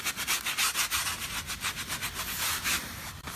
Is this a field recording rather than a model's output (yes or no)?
yes